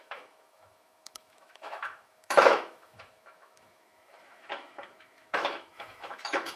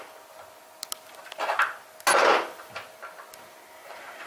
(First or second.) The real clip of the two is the second